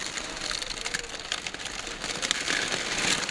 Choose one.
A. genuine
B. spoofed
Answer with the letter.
A